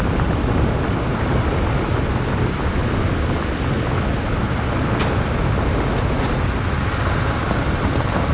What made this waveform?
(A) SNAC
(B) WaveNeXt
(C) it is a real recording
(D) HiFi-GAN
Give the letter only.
C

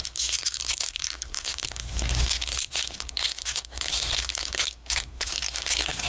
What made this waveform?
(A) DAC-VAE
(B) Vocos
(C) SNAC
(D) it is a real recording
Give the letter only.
C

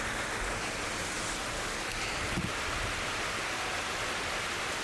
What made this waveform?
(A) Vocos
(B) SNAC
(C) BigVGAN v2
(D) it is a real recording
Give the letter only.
D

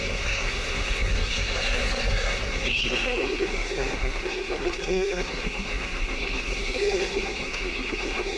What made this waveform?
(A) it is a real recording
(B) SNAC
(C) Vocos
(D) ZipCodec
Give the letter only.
B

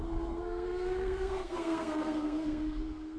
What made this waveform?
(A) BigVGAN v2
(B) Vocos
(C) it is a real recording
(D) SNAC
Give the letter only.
D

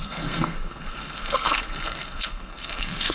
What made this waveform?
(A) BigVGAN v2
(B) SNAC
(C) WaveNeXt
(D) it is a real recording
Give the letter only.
B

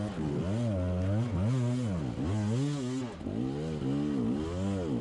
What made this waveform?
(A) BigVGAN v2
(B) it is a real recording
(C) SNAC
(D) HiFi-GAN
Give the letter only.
B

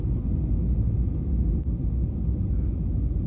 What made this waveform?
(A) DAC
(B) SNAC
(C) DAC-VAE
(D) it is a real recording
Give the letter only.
D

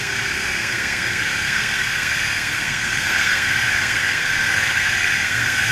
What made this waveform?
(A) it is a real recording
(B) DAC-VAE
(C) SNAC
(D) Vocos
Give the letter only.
C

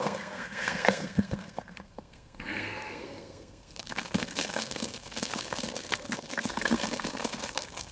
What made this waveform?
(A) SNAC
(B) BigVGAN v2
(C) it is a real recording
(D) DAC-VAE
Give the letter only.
A